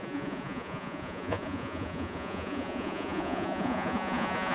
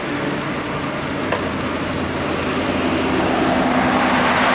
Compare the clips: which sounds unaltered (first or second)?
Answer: second